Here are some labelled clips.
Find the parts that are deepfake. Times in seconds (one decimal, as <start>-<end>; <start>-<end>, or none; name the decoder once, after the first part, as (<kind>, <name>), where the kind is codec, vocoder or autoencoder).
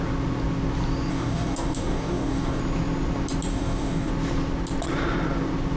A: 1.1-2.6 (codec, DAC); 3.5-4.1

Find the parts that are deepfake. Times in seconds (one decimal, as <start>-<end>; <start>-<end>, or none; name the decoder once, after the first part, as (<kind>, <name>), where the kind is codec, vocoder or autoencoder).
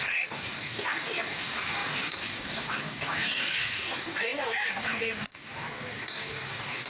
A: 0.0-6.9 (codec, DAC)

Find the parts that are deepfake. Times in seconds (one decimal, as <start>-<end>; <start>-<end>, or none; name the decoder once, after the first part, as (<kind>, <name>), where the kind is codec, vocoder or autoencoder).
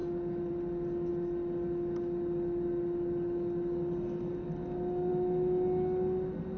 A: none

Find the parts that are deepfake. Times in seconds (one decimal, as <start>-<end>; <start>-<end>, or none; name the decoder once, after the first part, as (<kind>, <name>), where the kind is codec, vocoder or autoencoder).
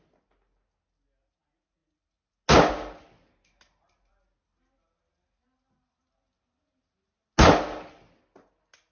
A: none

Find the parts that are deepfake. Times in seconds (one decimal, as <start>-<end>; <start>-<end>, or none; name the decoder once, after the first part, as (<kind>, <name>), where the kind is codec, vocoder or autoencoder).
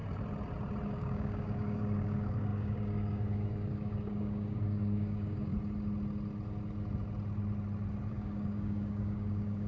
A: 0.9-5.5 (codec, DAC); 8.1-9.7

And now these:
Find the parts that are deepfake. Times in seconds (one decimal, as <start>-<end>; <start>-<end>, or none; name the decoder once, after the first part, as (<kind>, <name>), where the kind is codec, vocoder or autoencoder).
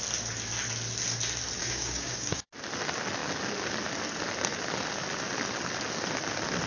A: 1.6-2.5 (codec, DAC)